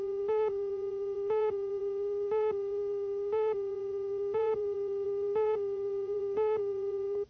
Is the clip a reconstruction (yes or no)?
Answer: yes